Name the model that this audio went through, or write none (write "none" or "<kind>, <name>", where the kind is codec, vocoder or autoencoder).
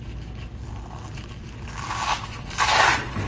none